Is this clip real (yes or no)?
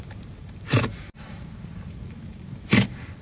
no